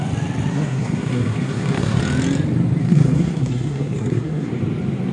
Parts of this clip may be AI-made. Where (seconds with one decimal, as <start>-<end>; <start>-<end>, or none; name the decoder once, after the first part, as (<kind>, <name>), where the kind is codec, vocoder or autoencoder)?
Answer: 0.5-2.0 (codec, SNAC); 2.8-4.5